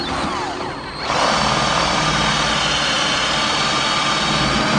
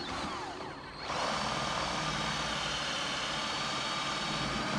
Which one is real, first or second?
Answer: first